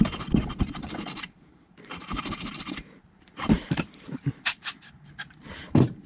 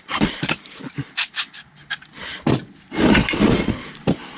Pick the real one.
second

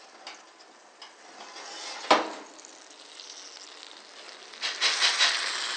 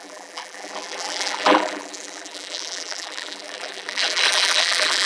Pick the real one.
first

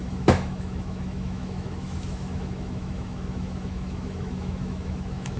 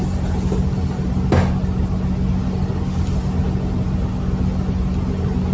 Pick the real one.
second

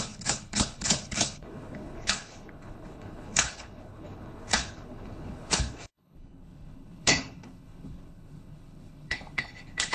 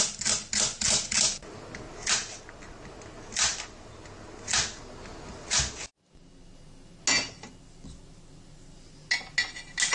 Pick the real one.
second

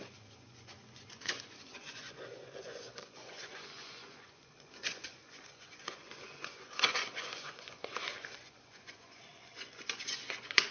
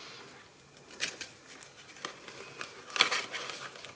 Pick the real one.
second